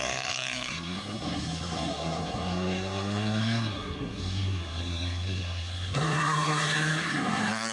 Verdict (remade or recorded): remade